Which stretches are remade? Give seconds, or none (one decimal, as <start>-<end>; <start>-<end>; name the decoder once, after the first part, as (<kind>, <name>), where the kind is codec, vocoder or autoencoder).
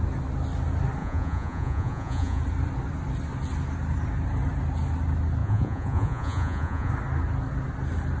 1.0-2.4 (vocoder, Vocos); 5.4-6.9